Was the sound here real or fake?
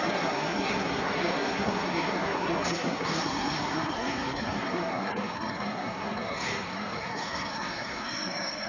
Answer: fake